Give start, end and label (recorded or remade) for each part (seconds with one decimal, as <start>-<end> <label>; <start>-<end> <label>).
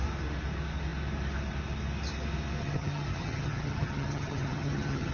0.0-2.6 recorded; 2.6-5.1 remade